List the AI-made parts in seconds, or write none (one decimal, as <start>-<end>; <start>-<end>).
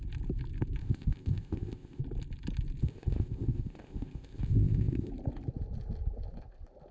0.8-2.0; 2.8-5.1